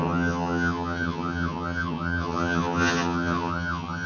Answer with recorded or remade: remade